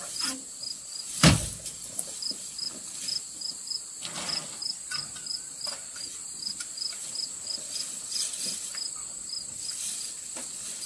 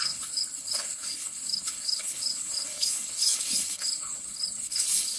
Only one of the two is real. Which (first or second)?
first